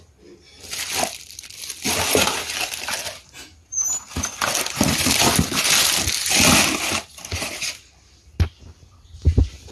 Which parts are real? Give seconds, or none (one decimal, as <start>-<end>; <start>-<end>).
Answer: 0.0-9.7